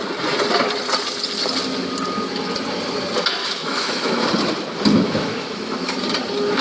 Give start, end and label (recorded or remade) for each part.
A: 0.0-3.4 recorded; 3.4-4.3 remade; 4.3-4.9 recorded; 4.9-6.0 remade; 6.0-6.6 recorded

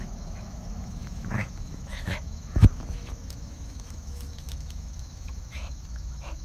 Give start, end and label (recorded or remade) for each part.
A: 0.0-6.4 remade

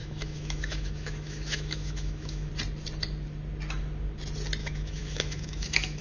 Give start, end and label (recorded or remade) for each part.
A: 0.0-2.5 remade; 2.5-4.6 recorded; 4.6-6.0 remade

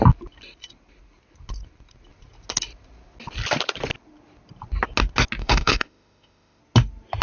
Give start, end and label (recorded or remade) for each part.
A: 0.0-5.4 recorded; 5.4-6.6 remade; 6.6-7.2 recorded

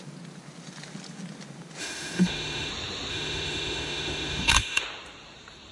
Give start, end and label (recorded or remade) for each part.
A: 0.0-1.8 recorded; 1.8-2.7 remade; 2.7-3.1 recorded; 3.1-4.8 remade; 4.8-5.7 recorded

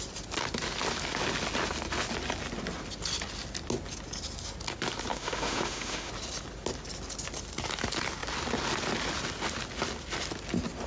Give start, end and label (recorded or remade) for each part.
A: 0.0-5.1 recorded; 5.1-6.1 remade; 6.1-10.9 recorded